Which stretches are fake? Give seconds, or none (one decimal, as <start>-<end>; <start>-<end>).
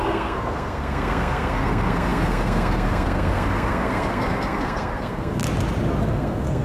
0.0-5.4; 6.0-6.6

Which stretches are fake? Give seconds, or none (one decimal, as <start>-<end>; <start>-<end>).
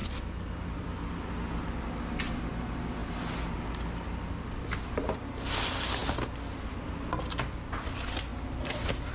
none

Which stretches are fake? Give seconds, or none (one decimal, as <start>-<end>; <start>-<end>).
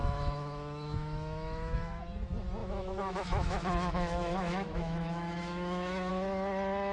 0.0-2.0; 2.6-6.1